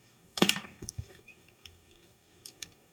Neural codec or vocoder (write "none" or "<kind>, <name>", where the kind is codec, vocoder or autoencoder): codec, DAC